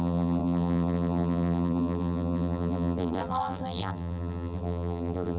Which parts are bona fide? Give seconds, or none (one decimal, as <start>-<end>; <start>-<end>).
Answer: none